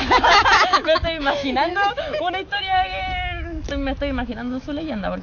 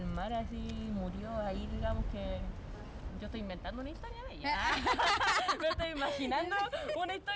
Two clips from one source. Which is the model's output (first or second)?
first